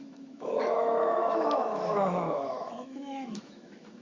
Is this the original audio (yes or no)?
no